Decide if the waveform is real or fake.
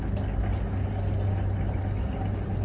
real